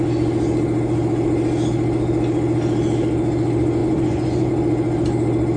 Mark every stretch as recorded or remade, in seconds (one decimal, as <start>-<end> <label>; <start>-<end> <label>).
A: 0.0-3.8 recorded; 3.8-4.5 remade; 4.5-5.6 recorded